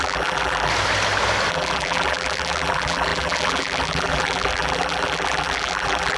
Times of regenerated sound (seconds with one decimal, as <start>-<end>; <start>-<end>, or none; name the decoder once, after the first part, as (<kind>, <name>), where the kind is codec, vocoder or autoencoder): 0.0-0.7 (vocoder, BigVGAN v2); 1.5-6.2